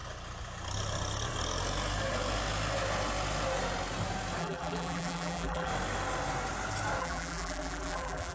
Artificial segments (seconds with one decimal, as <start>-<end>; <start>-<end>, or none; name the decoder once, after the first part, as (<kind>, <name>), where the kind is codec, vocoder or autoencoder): 4.4-5.7 (vocoder, BigVGAN v2); 7.0-8.3